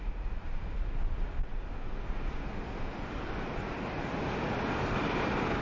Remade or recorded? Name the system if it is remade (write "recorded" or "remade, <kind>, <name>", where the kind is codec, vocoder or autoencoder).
recorded